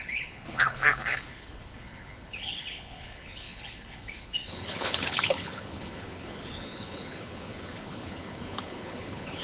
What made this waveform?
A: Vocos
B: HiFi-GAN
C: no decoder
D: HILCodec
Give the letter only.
D